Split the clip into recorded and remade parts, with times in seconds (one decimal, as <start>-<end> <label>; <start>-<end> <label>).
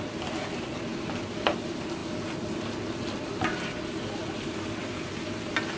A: 0.0-5.8 recorded